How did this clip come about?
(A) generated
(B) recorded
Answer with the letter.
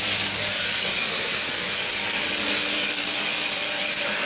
A